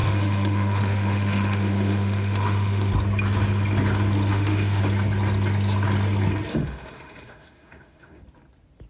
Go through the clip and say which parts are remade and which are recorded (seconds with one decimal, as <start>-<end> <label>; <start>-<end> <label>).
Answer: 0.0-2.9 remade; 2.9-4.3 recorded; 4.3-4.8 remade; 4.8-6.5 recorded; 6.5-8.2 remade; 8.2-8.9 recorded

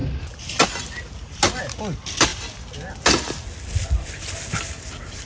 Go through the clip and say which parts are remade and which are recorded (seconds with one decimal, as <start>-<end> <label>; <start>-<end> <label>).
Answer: 0.0-5.3 recorded

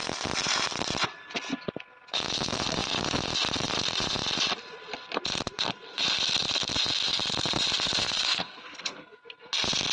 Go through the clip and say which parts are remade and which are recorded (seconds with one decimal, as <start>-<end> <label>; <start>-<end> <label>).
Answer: 0.0-8.0 recorded; 8.0-9.2 remade; 9.2-9.9 recorded

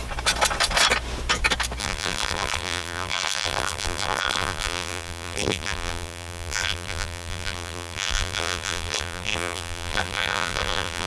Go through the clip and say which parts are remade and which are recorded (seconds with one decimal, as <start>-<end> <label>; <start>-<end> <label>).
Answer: 0.0-1.8 recorded; 1.8-11.1 remade